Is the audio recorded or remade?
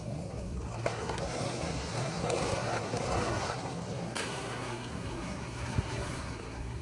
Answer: remade